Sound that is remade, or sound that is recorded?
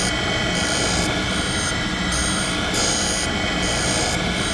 recorded